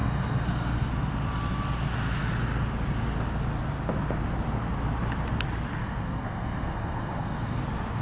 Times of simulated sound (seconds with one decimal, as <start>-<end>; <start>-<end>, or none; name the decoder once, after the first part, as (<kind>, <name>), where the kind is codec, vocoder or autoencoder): 0.0-0.9 (codec, SNAC); 5.8-7.6